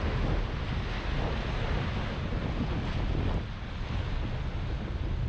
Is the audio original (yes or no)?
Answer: yes